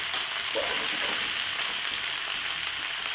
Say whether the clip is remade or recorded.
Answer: recorded